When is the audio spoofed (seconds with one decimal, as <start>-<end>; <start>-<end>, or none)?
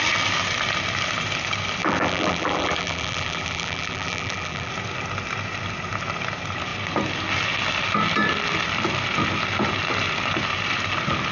1.8-4.7